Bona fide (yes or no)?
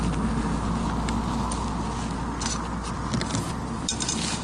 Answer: yes